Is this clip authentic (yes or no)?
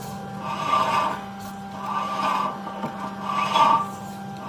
yes